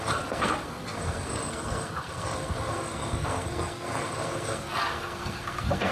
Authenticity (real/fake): fake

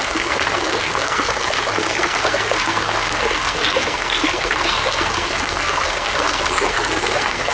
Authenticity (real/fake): fake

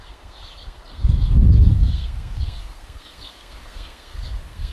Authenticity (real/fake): fake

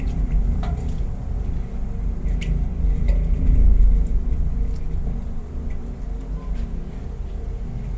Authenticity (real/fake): real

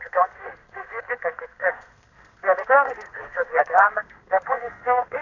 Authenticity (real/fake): fake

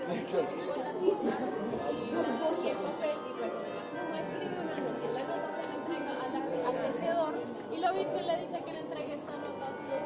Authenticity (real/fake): real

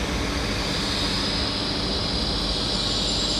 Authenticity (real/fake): real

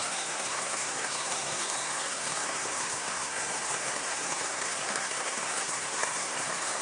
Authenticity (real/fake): fake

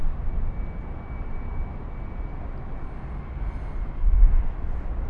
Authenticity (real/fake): real